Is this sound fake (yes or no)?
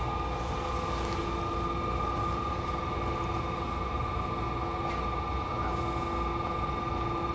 no